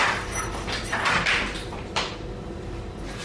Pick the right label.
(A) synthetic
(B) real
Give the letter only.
A